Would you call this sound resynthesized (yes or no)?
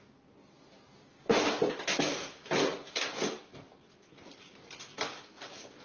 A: no